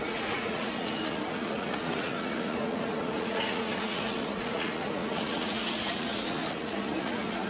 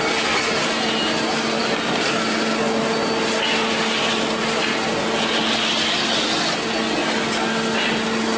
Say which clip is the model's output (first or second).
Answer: first